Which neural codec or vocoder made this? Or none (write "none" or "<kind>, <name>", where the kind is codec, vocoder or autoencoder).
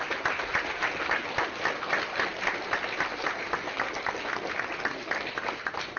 none